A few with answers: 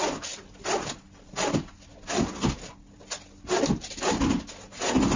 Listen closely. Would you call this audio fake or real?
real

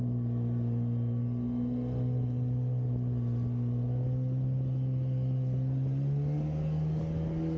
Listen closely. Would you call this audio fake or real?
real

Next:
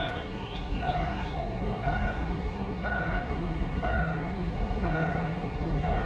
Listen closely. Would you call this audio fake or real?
fake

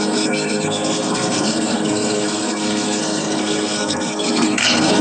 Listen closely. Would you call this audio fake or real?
fake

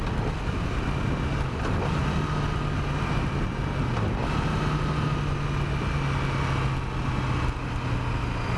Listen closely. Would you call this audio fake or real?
real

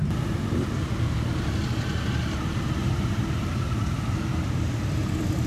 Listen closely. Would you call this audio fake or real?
real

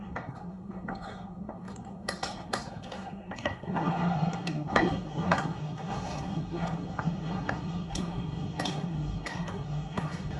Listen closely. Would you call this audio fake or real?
fake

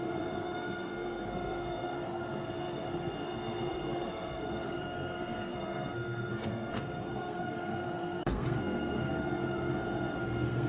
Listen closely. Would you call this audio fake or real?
fake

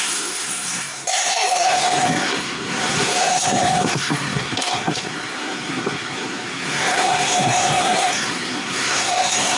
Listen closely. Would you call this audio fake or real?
fake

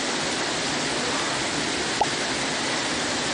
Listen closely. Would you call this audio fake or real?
real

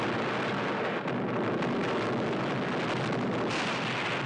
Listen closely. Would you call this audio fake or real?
real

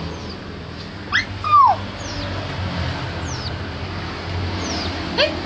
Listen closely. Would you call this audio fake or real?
real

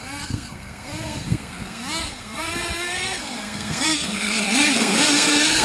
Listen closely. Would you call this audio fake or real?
fake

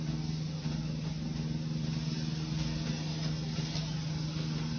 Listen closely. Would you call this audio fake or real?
real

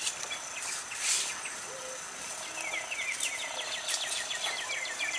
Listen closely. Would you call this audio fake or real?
real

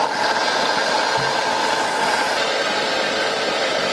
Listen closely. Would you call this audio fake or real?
real